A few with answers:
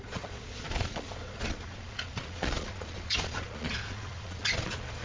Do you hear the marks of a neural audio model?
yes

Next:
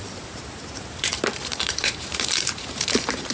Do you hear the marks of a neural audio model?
yes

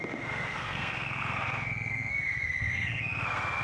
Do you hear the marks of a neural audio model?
yes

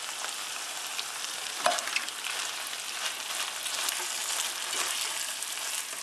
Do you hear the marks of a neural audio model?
no